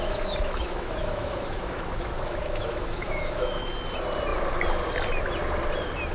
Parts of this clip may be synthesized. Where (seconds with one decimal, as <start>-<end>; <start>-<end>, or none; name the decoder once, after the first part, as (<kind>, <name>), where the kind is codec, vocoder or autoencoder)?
0.0-3.7 (autoencoder, DAC-VAE)